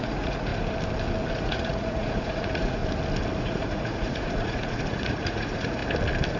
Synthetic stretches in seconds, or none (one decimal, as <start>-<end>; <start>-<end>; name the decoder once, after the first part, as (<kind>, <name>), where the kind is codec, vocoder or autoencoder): 0.0-0.5 (vocoder, Vocos); 1.3-2.8; 3.4-5.8

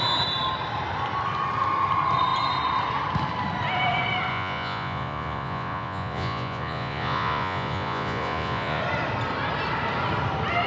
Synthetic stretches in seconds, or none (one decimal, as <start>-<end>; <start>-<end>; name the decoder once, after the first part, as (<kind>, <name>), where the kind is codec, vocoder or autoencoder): 4.3-8.8 (vocoder, Vocos)

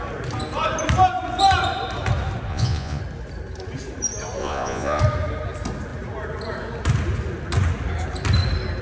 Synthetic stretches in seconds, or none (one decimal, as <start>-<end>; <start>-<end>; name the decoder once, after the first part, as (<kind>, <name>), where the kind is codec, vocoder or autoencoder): 2.5-3.0 (vocoder, Vocos); 4.4-5.0

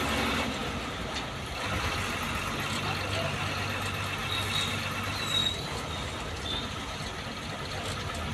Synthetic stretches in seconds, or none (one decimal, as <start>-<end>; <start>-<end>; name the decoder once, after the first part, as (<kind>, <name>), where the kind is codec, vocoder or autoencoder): none